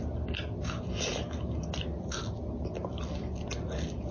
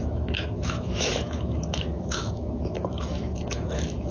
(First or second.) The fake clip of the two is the second